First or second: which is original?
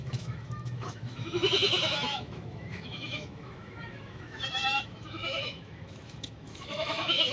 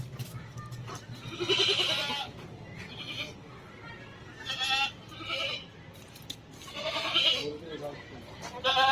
second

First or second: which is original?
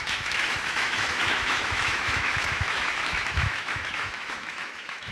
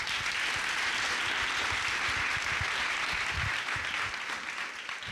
second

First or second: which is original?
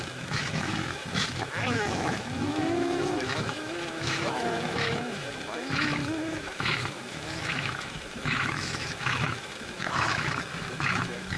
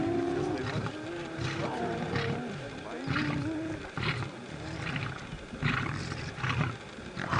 second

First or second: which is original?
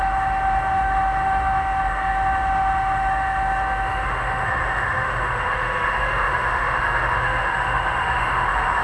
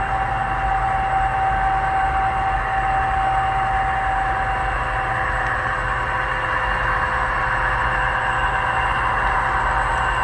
second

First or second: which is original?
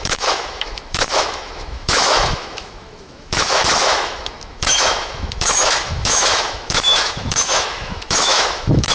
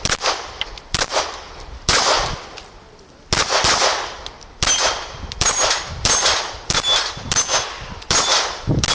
second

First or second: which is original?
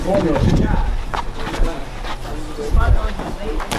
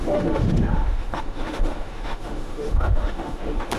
first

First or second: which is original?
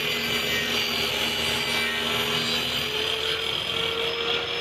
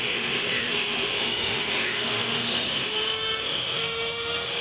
first